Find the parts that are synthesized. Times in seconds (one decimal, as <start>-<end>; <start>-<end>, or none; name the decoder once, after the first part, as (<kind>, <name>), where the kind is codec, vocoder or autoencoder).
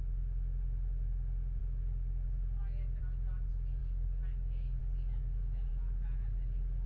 3.8-4.8 (codec, DAC)